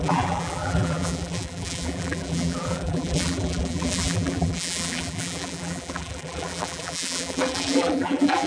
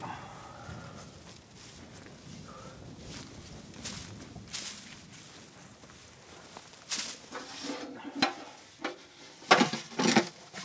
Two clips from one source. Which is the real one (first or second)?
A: second